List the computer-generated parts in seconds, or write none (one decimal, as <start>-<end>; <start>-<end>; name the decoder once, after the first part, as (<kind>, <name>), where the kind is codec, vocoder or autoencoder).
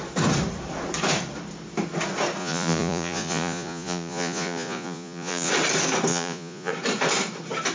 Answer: 2.4-5.5 (vocoder, Vocos); 6.1-6.7